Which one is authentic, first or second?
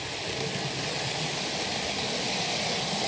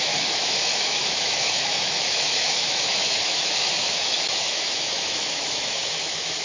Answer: first